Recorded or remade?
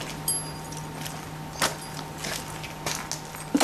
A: recorded